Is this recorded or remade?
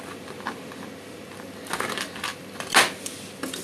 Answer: recorded